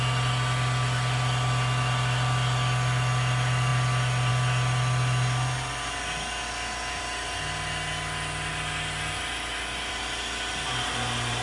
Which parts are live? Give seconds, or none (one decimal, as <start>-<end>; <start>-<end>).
0.0-11.4